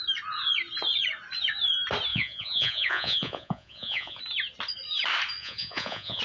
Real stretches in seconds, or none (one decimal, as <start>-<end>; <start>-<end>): 0.0-2.1; 4.2-5.4

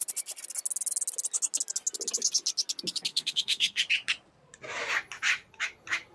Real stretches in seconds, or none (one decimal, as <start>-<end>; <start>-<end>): 0.0-3.1; 3.8-6.1

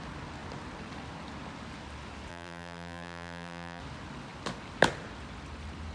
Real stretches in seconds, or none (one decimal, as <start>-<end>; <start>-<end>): 0.0-2.3; 3.8-5.9